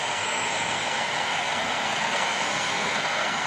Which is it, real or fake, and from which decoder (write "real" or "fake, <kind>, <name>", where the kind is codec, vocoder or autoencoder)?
fake, codec, SNAC